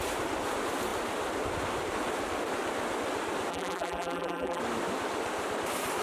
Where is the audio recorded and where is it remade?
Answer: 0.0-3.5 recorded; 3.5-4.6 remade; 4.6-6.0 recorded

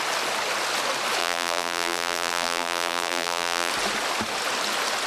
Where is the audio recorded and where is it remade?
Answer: 0.0-1.2 recorded; 1.2-3.7 remade; 3.7-5.1 recorded

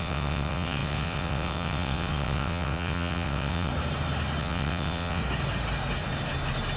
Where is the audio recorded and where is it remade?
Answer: 0.0-3.7 remade; 3.7-4.4 recorded; 4.4-5.2 remade; 5.2-6.8 recorded